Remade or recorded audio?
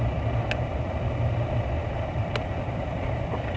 recorded